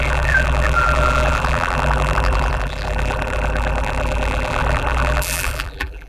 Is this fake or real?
fake